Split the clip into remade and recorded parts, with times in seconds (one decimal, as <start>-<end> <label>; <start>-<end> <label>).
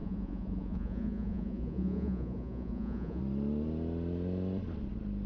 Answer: 0.0-3.2 remade; 3.2-5.3 recorded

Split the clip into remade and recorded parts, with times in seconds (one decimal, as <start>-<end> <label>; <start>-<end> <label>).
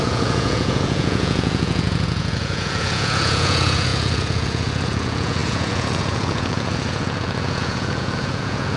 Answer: 0.0-8.8 remade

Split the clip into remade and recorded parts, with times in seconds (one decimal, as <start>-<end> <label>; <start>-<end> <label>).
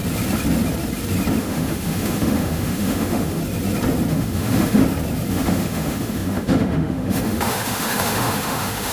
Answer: 0.0-1.4 recorded; 1.4-3.4 remade; 3.4-4.1 recorded; 4.1-4.8 remade; 4.8-5.3 recorded; 5.3-8.9 remade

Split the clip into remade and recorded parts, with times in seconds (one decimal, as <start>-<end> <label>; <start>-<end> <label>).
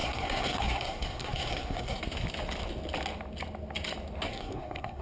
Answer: 0.0-2.0 remade; 2.0-4.3 recorded; 4.3-5.0 remade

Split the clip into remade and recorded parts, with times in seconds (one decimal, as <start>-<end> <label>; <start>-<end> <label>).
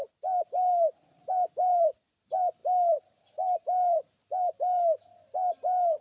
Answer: 0.0-6.0 recorded